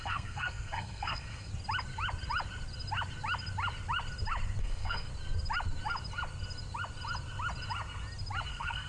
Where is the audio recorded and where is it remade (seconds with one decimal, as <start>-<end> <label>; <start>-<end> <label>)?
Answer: 0.0-1.5 remade; 1.5-4.6 recorded; 4.6-5.1 remade; 5.1-8.5 recorded; 8.5-8.9 remade